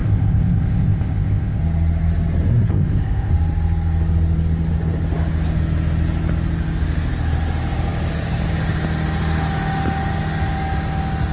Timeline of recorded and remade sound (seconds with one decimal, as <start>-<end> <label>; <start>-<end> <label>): 0.0-1.6 remade; 1.6-2.7 recorded; 2.7-3.3 remade; 3.3-11.3 recorded